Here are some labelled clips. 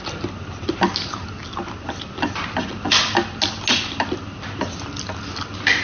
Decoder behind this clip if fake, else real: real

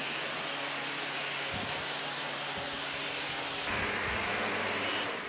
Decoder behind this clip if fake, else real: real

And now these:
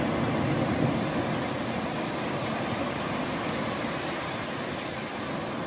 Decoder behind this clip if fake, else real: real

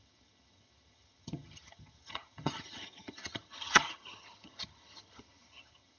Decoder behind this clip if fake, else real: fake, vocoder, HiFi-GAN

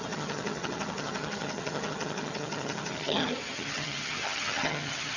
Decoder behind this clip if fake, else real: fake, vocoder, HiFi-GAN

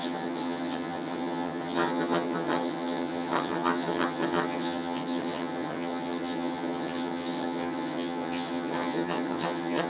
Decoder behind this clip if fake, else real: fake, vocoder, HiFi-GAN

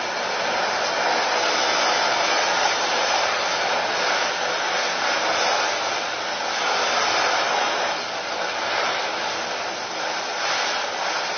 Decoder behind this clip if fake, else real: real